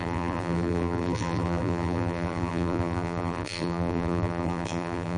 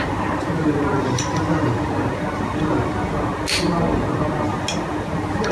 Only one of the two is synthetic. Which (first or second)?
first